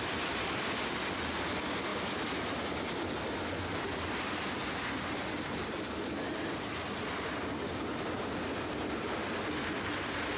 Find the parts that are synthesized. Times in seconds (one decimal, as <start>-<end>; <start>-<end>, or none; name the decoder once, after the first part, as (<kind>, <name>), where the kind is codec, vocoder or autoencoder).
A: none